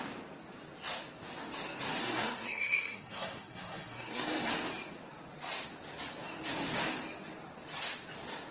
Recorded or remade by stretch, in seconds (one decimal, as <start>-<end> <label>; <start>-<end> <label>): 0.0-2.0 recorded; 2.0-4.5 remade; 4.5-8.5 recorded